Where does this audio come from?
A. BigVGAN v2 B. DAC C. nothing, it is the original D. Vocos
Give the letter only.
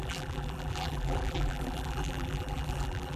A